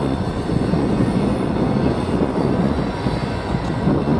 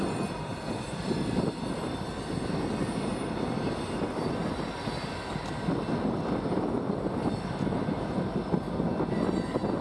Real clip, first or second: second